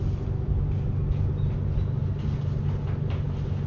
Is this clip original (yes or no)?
yes